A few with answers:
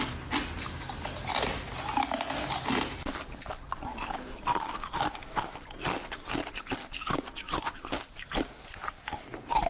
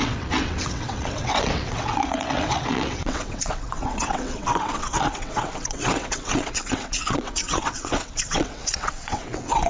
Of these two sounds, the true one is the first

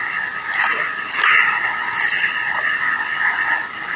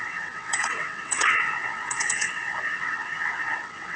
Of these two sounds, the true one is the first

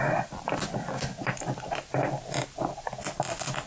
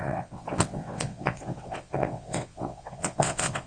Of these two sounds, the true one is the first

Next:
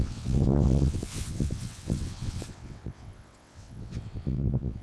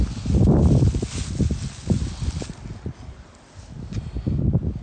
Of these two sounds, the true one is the second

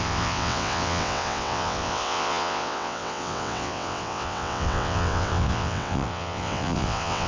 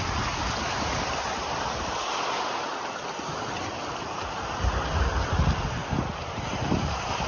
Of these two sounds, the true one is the second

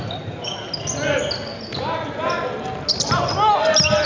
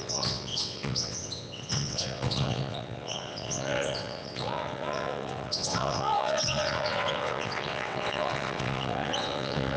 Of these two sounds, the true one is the first